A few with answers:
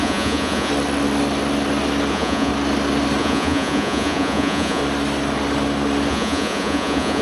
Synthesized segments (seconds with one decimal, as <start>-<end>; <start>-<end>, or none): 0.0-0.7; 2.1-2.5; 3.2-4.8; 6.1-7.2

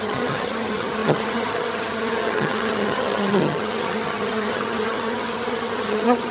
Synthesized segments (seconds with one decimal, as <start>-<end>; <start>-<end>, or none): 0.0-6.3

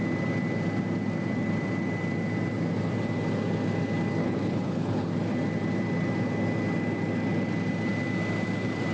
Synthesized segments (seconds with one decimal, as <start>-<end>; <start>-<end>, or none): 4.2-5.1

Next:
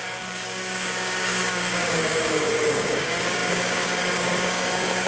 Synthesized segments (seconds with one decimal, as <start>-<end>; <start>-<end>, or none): 0.0-5.1